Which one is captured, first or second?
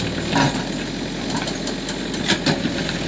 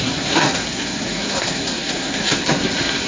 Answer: first